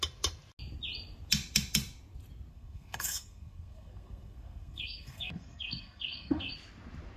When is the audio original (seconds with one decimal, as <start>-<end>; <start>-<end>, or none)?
0.0-2.5; 6.5-7.2